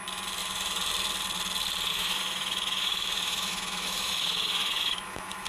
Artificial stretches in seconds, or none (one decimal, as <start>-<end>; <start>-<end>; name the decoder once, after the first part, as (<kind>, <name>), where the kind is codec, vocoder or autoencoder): 1.9-5.5 (autoencoder, DAC-VAE)